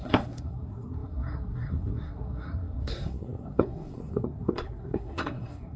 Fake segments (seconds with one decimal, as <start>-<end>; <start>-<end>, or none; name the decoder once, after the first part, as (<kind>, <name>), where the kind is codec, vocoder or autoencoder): 0.0-5.8 (codec, SNAC)